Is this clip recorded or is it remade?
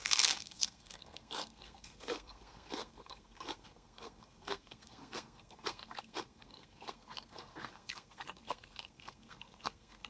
remade